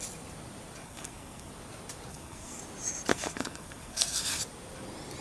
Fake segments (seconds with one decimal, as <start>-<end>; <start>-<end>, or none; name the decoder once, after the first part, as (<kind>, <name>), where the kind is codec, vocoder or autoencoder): 0.8-1.5 (codec, SNAC); 2.1-2.6; 3.1-4.4